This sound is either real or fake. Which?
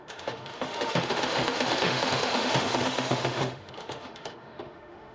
fake